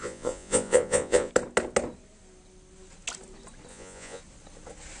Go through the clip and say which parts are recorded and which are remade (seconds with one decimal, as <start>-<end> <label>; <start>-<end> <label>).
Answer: 0.0-1.3 remade; 1.3-3.7 recorded; 3.7-4.2 remade; 4.2-5.0 recorded